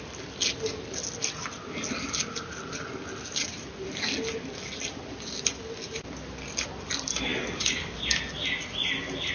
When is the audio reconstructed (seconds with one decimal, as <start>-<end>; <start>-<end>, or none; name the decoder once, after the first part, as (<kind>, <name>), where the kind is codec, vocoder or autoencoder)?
7.3-8.0 (codec, DAC)